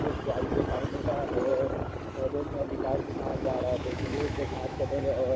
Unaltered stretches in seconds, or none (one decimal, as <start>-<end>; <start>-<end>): 0.0-3.3; 5.0-5.4